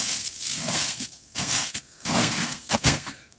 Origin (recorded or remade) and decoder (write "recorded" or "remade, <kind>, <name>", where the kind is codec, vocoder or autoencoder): remade, codec, SNAC